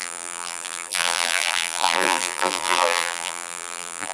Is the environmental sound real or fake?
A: fake